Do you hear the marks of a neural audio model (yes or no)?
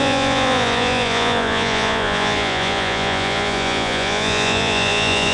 yes